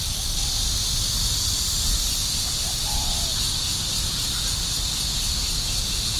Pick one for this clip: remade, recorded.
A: recorded